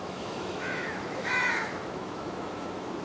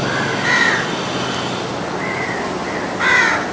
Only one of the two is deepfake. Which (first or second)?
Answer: first